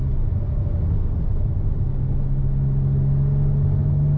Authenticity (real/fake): real